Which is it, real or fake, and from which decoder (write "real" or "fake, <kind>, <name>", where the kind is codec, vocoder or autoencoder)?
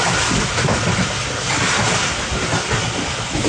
real